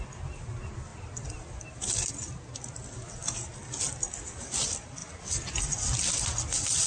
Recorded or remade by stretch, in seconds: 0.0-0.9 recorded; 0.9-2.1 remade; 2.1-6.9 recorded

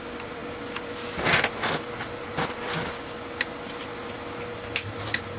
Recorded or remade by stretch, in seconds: 0.0-5.4 recorded